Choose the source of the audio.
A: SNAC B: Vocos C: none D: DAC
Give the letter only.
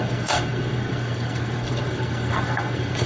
A